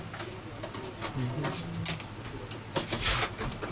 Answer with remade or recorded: recorded